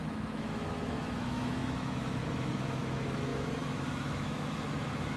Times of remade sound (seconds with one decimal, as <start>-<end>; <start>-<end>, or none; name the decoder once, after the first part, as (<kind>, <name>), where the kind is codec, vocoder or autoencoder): 0.0-5.2 (autoencoder, DAC-VAE)